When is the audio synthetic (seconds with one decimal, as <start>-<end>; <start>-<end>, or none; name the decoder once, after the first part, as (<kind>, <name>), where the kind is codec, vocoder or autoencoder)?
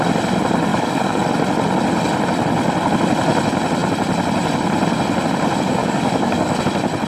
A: 0.7-1.2 (codec, DAC); 5.8-6.6